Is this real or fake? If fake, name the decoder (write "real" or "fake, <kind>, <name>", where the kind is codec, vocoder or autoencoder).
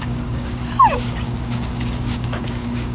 fake, codec, DAC